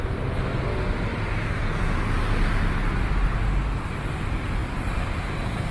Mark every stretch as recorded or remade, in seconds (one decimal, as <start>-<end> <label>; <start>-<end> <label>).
0.0-5.7 recorded